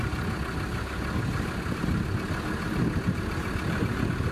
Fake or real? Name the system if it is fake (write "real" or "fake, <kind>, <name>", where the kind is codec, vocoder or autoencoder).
real